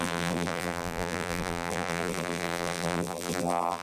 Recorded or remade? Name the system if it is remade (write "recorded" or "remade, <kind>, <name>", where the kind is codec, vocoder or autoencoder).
remade, vocoder, BigVGAN v2